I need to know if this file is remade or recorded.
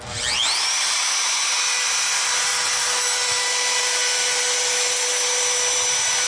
recorded